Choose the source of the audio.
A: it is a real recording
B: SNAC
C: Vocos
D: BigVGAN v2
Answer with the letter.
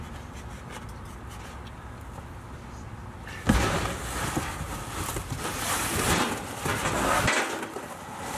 A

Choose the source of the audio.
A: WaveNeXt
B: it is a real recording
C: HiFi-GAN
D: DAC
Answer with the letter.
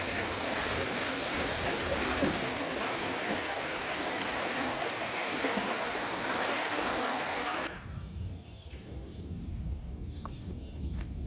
D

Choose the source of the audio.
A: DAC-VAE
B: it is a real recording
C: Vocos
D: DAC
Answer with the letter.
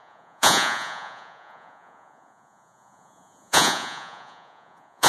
C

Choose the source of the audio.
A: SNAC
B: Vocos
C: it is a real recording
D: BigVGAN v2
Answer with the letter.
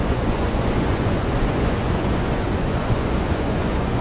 B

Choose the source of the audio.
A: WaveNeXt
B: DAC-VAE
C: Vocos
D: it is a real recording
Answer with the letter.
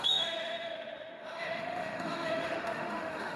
B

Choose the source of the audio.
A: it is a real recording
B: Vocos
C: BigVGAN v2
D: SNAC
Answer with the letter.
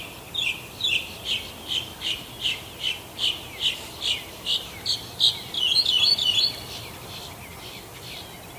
A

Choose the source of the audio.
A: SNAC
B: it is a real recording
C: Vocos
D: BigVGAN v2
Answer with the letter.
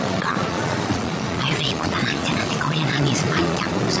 C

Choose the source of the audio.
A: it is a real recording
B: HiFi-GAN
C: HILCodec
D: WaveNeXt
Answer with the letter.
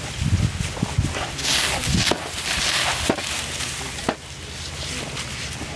A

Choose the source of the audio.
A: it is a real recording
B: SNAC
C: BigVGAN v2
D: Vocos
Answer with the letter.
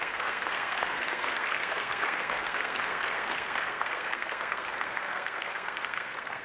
B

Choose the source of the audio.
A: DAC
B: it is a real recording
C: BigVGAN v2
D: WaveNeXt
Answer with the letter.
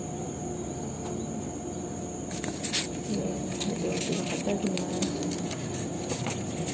B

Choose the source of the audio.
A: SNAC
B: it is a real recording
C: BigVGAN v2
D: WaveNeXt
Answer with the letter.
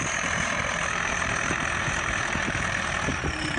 C